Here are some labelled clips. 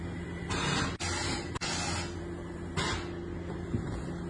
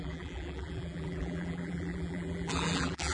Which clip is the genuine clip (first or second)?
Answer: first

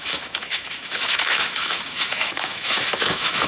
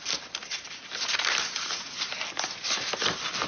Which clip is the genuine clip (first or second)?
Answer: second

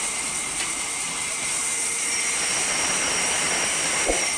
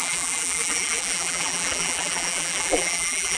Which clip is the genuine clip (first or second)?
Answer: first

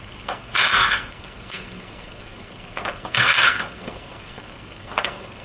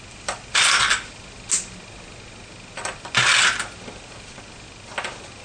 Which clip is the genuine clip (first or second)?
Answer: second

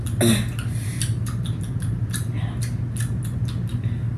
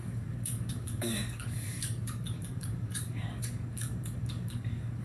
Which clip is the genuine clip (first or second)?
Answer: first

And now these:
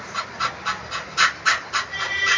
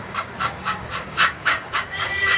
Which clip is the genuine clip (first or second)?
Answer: first